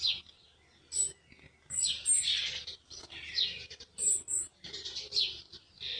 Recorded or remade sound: recorded